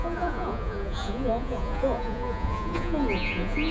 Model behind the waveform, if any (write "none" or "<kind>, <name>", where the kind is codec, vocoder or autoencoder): vocoder, Vocos